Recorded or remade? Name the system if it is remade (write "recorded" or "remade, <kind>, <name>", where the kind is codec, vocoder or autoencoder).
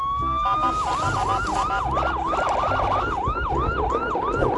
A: recorded